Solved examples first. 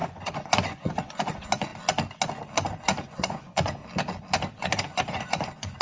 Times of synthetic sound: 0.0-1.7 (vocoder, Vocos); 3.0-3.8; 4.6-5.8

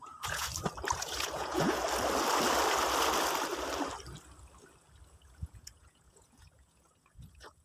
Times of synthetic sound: 0.0-0.5 (vocoder, Vocos); 1.0-1.8; 5.1-7.6

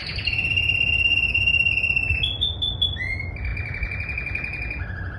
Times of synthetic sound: none

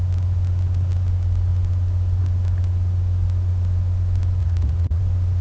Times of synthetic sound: 4.4-5.0 (vocoder, Vocos)

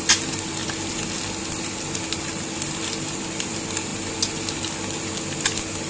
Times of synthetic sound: none

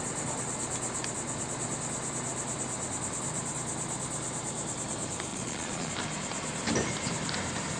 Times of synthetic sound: 5.3-5.9 (vocoder, Vocos)

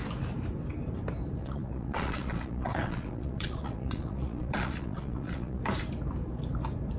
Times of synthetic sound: 1.4-5.6 (vocoder, Vocos)

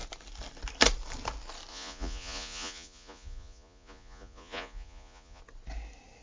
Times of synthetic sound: 1.7-5.4 (vocoder, Vocos)